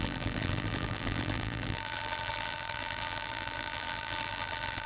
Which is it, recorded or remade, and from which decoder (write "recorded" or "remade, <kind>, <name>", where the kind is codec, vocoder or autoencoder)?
remade, vocoder, BigVGAN v2